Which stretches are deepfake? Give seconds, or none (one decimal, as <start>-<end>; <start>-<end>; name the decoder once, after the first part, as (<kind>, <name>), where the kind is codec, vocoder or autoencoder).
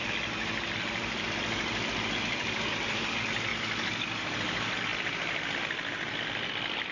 0.0-3.5 (vocoder, BigVGAN v2); 4.2-6.9